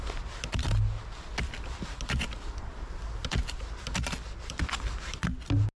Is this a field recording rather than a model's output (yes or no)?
yes